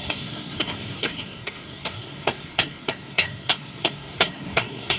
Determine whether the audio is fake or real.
fake